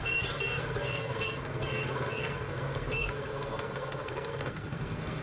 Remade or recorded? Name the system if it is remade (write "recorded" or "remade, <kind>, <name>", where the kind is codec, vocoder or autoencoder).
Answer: remade, codec, SNAC